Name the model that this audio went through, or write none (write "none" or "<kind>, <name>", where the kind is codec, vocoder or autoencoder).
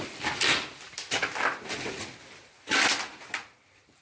none